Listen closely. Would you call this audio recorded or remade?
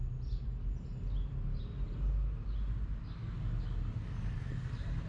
recorded